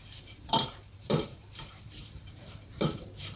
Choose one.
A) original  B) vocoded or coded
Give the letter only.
B